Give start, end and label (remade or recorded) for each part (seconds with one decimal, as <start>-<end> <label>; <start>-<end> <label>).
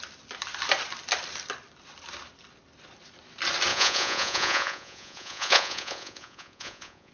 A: 0.0-3.7 recorded; 3.7-7.1 remade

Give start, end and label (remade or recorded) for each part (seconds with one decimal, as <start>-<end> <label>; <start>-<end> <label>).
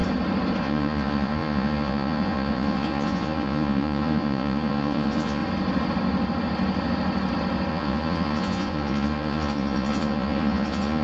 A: 0.0-0.6 recorded; 0.6-5.4 remade; 5.4-7.7 recorded; 7.7-11.0 remade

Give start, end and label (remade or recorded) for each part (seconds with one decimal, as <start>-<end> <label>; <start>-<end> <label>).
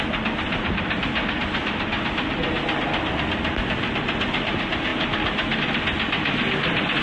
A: 0.0-7.0 recorded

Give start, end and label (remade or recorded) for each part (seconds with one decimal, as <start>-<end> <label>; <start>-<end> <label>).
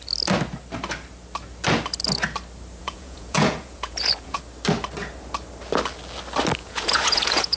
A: 0.0-2.8 recorded; 2.8-4.4 remade; 4.4-6.6 recorded; 6.6-7.6 remade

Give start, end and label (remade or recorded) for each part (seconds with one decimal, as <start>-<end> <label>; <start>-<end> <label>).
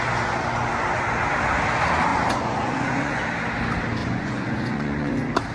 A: 0.0-2.1 recorded; 2.1-3.2 remade; 3.2-4.0 recorded; 4.0-5.1 remade; 5.1-5.5 recorded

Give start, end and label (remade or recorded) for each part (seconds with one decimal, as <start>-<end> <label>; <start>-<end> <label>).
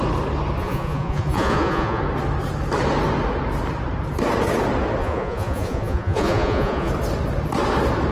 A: 0.0-0.6 recorded; 0.6-2.0 remade; 2.0-5.0 recorded; 5.0-6.9 remade; 6.9-8.1 recorded